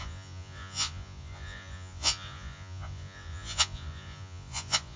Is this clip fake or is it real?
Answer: fake